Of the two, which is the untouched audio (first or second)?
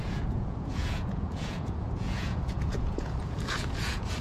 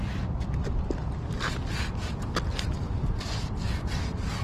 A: second